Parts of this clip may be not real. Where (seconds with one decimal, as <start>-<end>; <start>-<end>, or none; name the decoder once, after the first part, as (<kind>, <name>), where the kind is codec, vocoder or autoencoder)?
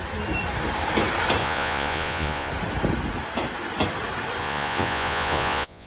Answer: 1.4-2.5 (vocoder, Vocos); 4.4-5.9